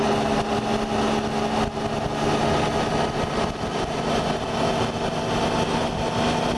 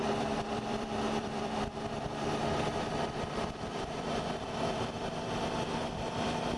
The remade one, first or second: second